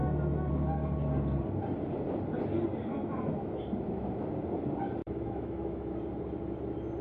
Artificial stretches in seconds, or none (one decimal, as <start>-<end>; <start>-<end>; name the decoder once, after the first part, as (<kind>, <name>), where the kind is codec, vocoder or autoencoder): 0.0-0.5 (autoencoder, DAC-VAE); 2.9-3.6; 5.0-5.9